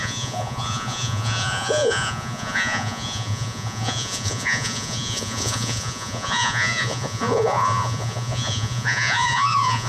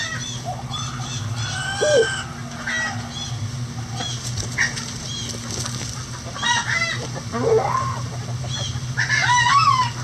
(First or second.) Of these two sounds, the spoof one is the first